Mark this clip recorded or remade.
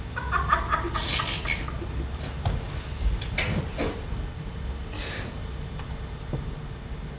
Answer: recorded